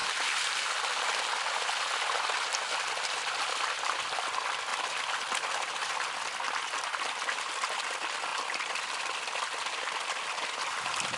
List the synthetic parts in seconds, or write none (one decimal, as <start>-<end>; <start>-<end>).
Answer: 0.0-1.3; 8.3-8.8